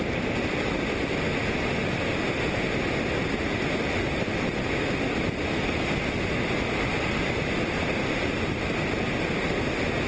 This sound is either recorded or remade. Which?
recorded